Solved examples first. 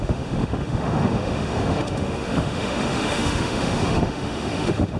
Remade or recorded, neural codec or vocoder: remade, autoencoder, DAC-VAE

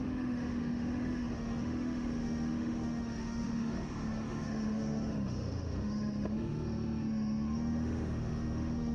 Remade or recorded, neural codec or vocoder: remade, autoencoder, DAC-VAE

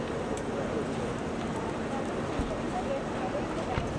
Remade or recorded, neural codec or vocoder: recorded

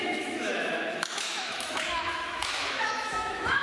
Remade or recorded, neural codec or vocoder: remade, autoencoder, DAC-VAE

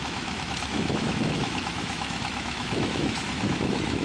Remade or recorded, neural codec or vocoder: remade, autoencoder, DAC-VAE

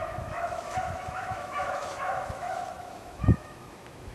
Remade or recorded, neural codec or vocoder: remade, autoencoder, DAC-VAE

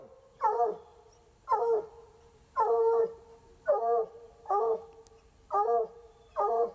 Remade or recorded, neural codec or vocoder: recorded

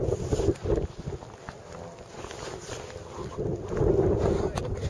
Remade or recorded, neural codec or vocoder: recorded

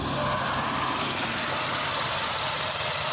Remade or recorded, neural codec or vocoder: recorded